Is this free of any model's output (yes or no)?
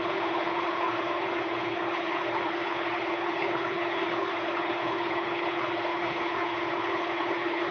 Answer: no